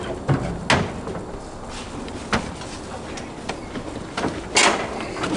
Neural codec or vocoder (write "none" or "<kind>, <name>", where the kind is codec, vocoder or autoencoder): none